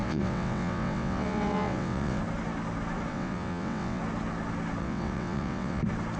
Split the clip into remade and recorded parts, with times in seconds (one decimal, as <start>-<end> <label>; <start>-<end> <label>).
0.0-2.2 remade; 2.2-3.1 recorded; 3.1-4.0 remade; 4.0-4.8 recorded; 4.8-5.8 remade; 5.8-6.2 recorded